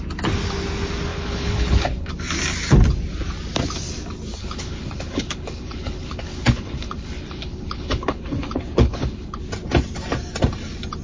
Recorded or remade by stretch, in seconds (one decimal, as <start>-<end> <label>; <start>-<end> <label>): 0.0-1.1 recorded; 1.1-2.1 remade; 2.1-4.4 recorded; 4.4-9.4 remade; 9.4-11.0 recorded